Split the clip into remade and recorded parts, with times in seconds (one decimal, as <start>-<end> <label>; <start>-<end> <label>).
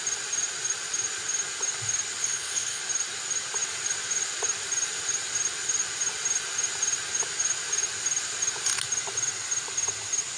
0.0-2.2 recorded; 2.2-2.8 remade; 2.8-10.4 recorded